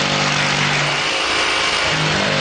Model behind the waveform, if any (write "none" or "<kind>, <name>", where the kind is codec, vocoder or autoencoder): none